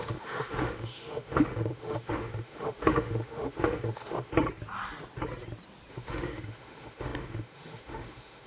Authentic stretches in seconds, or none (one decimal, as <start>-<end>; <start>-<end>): 4.3-5.9